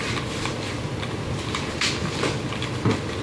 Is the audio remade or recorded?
recorded